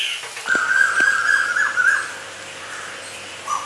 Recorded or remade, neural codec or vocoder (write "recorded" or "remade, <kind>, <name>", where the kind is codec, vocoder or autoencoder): recorded